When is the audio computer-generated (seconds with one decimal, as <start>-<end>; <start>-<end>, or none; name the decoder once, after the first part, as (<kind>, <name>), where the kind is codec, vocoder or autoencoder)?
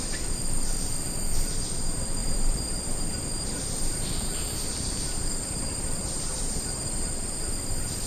2.2-7.1 (vocoder, BigVGAN v2)